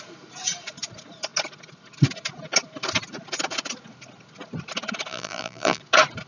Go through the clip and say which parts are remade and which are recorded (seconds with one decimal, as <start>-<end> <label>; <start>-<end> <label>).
0.0-5.1 recorded; 5.1-5.8 remade; 5.8-6.3 recorded